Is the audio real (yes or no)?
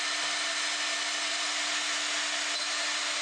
yes